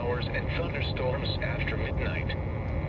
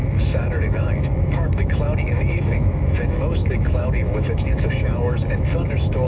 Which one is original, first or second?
first